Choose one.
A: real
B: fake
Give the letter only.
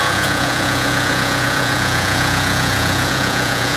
B